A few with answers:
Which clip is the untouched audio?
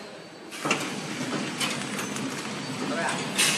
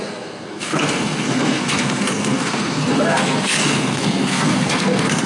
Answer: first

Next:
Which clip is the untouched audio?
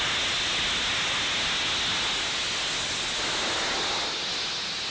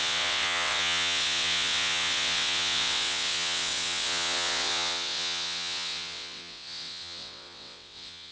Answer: first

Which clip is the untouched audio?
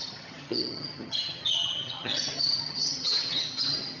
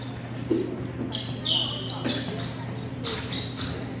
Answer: second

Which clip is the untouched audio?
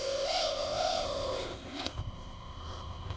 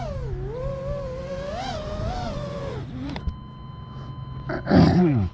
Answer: second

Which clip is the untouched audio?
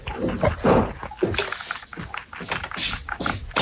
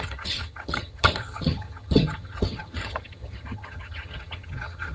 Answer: first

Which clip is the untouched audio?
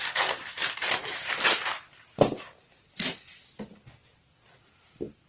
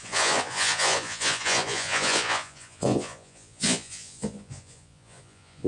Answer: first